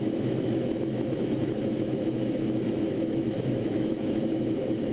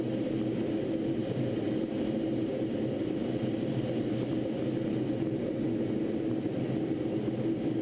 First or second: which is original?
second